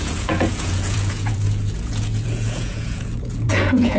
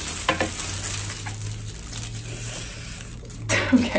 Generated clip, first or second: first